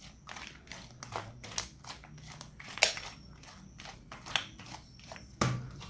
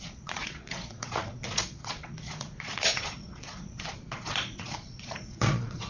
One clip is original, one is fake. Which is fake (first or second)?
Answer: second